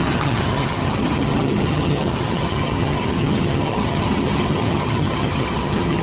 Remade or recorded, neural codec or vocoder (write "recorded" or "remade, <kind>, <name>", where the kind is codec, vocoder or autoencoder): remade, vocoder, HiFi-GAN